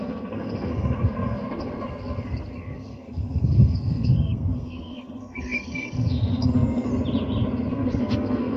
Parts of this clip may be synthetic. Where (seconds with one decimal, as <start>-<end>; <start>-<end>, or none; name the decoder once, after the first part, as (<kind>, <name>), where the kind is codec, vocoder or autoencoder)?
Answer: 0.0-6.9 (codec, SNAC); 7.7-8.6